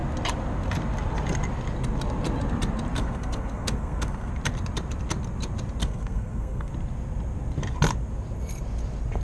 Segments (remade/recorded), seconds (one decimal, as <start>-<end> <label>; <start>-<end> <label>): 0.0-3.0 recorded; 3.0-4.3 remade; 4.3-5.8 recorded; 5.8-6.7 remade; 6.7-9.2 recorded